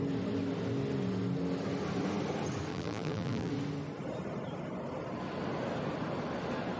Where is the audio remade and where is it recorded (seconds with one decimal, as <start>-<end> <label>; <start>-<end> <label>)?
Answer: 0.0-2.7 recorded; 2.7-3.5 remade; 3.5-6.8 recorded